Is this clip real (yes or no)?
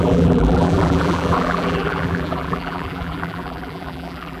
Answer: no